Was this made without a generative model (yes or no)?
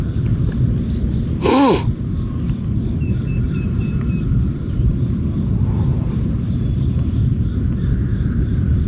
yes